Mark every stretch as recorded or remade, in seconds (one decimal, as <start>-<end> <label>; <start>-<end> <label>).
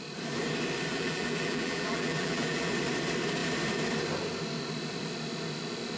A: 0.0-0.9 recorded; 0.9-2.7 remade; 2.7-6.0 recorded